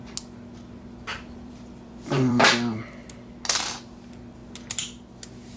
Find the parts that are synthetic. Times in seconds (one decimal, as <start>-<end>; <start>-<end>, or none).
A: 1.1-2.4